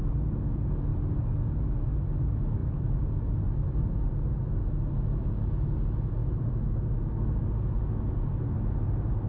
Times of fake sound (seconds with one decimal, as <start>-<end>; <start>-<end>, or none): 0.9-1.5; 2.6-3.9